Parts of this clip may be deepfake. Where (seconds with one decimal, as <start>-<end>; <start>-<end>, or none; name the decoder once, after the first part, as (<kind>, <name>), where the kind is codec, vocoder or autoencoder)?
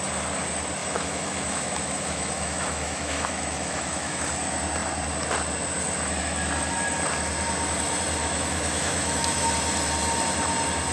0.8-4.2 (autoencoder, DAC-VAE); 8.2-9.5